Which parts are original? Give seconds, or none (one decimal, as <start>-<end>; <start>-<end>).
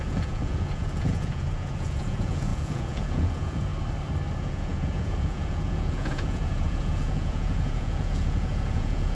3.7-4.4